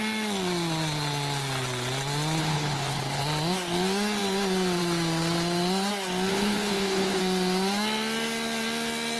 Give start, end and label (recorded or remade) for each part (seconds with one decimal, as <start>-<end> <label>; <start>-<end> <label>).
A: 0.0-2.4 recorded; 2.4-3.2 remade; 3.2-6.3 recorded; 6.3-7.2 remade; 7.2-9.2 recorded